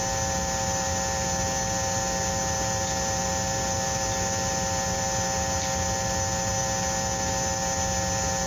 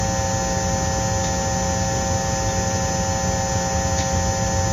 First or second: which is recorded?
second